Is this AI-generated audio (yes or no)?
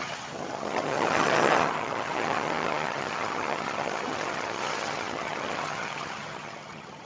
yes